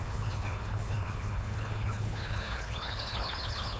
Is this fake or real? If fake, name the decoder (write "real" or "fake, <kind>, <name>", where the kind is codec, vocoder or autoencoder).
fake, codec, HILCodec